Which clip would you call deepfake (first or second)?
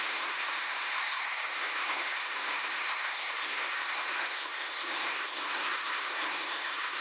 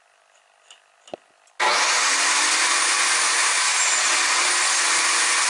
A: first